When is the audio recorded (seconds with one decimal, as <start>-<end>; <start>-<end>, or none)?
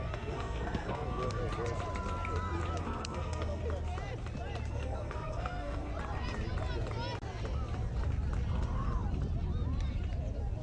1.4-2.8; 3.6-4.7; 5.9-10.6